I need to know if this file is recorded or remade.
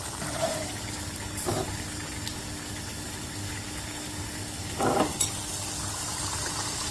recorded